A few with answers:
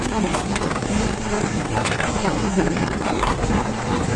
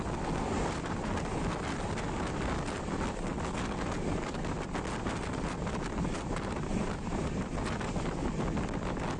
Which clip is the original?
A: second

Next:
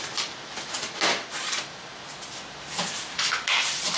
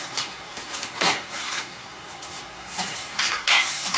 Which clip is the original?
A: first